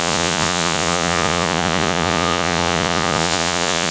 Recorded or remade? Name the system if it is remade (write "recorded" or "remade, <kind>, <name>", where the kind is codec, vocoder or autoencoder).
remade, vocoder, Vocos